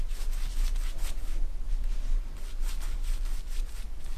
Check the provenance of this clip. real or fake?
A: real